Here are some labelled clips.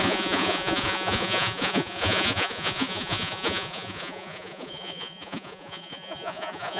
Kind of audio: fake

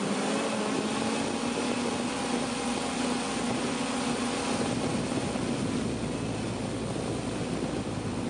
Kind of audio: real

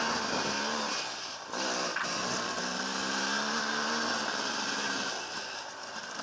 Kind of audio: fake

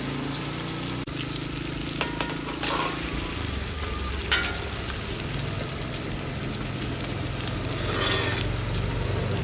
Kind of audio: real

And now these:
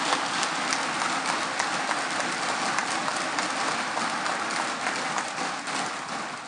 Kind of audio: real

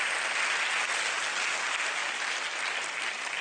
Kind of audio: real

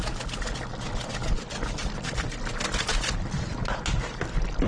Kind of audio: real